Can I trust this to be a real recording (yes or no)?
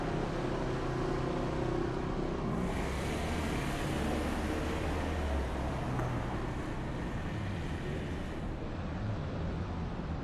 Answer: yes